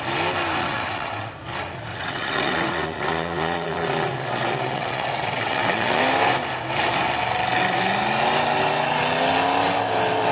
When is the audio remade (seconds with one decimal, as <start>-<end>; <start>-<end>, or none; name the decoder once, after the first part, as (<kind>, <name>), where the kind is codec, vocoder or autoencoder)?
0.6-1.3 (vocoder, WaveNeXt); 1.9-6.0

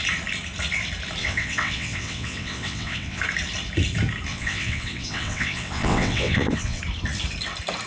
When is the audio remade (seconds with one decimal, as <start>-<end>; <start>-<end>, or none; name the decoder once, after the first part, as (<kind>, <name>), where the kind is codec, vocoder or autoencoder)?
1.2-3.2 (vocoder, WaveNeXt); 4.3-6.8

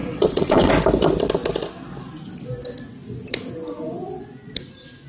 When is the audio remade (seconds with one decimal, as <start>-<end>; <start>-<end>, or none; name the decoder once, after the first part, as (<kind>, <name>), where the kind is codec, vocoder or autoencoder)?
0.0-0.7 (vocoder, WaveNeXt)